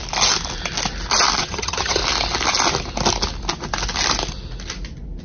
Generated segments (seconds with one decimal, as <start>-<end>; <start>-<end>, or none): 1.4-2.0